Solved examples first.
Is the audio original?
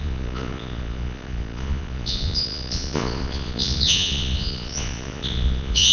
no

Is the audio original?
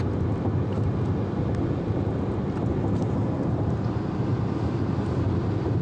yes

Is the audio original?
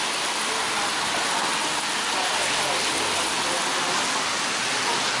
yes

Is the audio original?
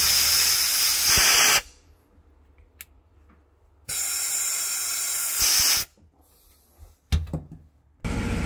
yes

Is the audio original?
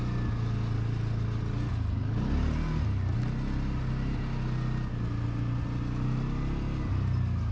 yes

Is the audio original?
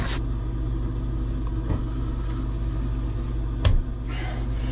yes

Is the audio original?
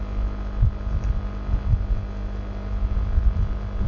yes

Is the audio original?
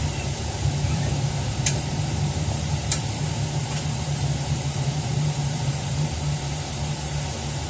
no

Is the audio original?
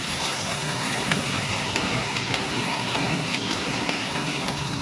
no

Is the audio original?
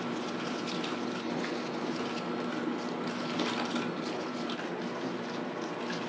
yes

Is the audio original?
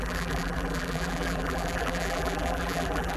no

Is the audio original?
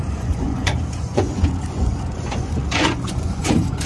no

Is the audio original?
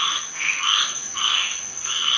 no